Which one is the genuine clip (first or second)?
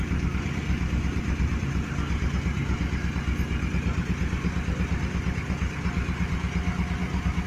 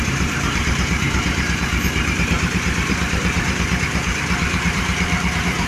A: first